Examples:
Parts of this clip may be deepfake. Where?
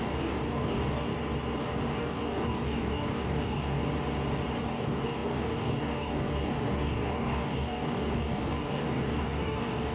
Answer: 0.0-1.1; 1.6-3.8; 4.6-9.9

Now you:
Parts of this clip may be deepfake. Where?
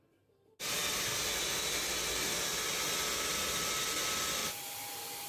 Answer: 4.4-5.3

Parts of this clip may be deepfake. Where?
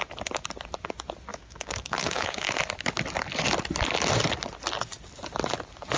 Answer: 1.3-2.6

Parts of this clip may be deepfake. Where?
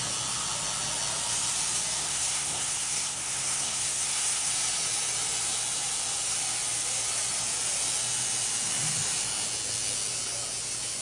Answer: 2.0-4.5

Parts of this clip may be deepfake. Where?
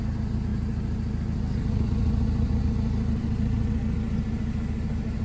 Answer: none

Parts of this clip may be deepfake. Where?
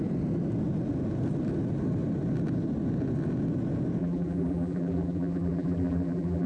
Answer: 4.0-6.5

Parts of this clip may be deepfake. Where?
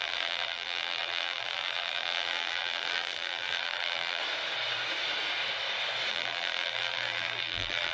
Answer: 0.0-4.2; 6.1-7.9